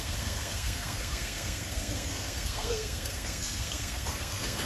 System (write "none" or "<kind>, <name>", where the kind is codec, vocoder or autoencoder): codec, SNAC